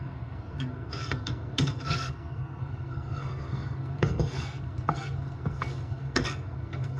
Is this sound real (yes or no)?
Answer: no